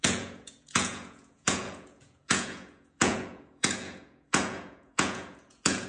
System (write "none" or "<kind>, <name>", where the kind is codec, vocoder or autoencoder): vocoder, Vocos